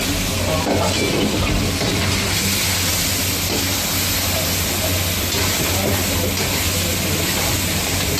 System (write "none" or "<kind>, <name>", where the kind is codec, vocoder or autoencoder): none